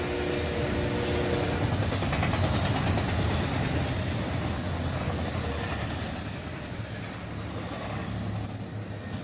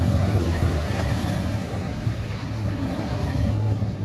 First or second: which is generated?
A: second